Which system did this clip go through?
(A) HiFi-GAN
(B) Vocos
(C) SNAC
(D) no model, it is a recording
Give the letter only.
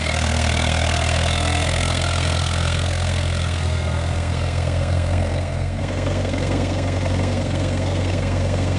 C